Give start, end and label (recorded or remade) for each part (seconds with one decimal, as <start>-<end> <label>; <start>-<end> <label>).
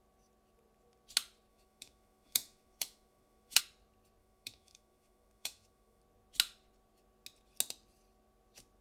0.0-1.5 recorded; 1.5-3.6 remade; 3.6-4.2 recorded; 4.2-6.0 remade; 6.0-8.8 recorded